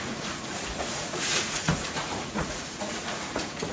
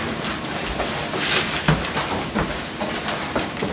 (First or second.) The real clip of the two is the second